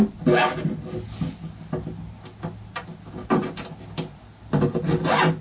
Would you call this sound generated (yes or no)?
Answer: no